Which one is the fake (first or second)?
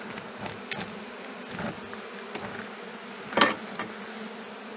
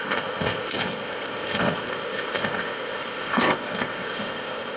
second